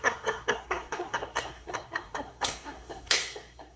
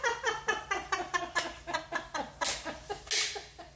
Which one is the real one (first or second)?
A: second